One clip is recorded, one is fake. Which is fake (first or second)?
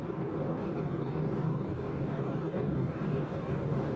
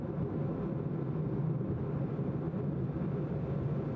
first